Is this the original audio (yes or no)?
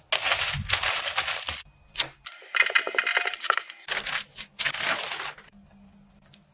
yes